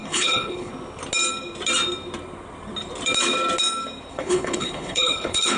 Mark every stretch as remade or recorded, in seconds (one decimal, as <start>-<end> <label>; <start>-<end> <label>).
0.0-0.7 remade; 0.7-4.1 recorded; 4.1-5.6 remade